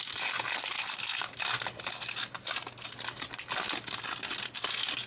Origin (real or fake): real